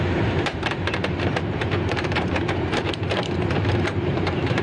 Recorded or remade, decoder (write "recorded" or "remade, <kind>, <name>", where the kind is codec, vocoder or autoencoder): remade, vocoder, BigVGAN v2